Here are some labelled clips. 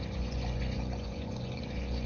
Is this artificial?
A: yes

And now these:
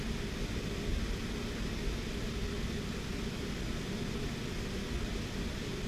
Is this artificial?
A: no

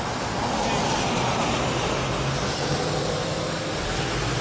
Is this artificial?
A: no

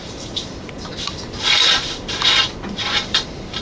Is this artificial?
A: yes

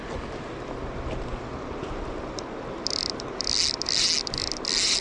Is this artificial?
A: no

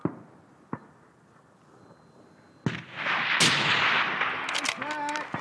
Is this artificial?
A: no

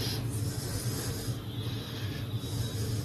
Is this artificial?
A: no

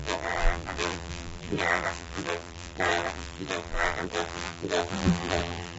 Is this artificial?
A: yes